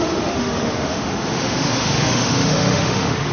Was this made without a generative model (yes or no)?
no